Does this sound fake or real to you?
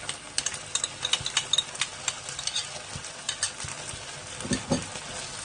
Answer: real